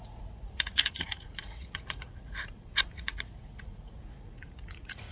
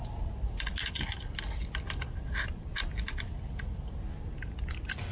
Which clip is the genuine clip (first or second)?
second